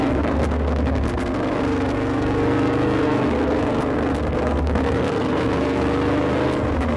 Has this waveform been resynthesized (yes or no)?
yes